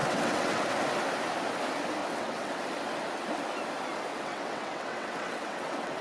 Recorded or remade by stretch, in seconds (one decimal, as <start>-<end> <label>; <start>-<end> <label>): 0.0-0.6 remade; 0.6-2.0 recorded; 2.0-2.6 remade; 2.6-4.1 recorded; 4.1-6.0 remade